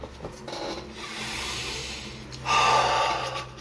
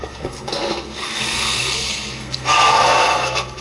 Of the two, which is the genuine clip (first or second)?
first